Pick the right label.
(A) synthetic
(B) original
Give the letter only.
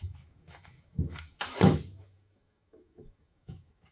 A